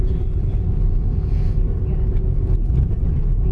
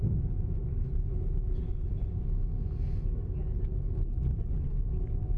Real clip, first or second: second